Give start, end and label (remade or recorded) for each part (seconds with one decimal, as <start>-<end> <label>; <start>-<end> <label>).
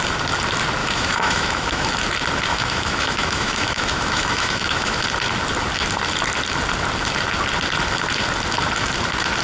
0.0-0.8 recorded; 0.8-1.9 remade; 1.9-2.5 recorded; 2.5-5.0 remade; 5.0-9.4 recorded